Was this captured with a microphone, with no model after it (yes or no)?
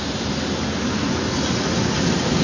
yes